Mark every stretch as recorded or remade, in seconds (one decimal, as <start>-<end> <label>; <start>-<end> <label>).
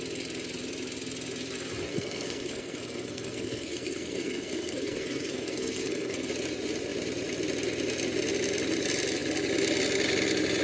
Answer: 0.0-1.9 recorded; 1.9-6.3 remade; 6.3-10.6 recorded